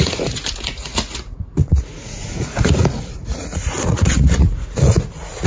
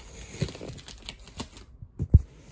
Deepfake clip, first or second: first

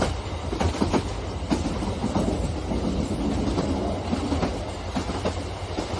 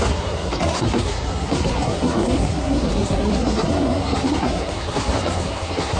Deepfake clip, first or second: second